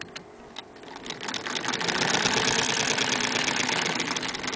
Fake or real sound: real